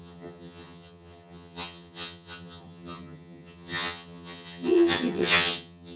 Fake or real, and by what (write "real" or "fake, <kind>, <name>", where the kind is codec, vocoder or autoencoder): fake, vocoder, HiFi-GAN